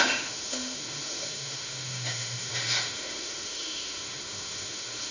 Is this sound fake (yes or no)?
yes